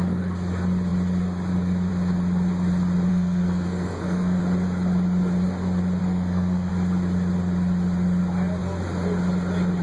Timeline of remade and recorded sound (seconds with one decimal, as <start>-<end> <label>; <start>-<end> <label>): 0.0-3.1 recorded; 3.1-4.4 remade; 4.4-6.0 recorded; 6.0-6.7 remade; 6.7-9.8 recorded